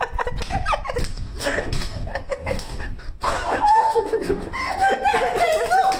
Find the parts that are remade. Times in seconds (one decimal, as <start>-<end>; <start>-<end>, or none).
1.1-4.7